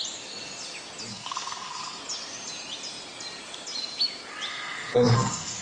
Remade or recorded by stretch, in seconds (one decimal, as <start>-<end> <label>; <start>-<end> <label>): 0.0-1.1 recorded; 1.1-2.0 remade; 2.0-4.5 recorded; 4.5-5.6 remade